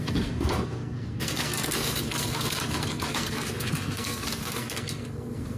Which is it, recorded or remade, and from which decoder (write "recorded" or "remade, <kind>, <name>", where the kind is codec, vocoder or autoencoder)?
remade, codec, SNAC